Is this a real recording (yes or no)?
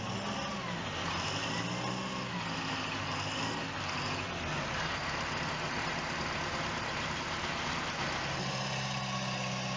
yes